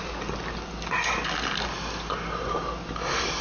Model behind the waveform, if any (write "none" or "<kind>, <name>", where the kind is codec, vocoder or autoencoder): none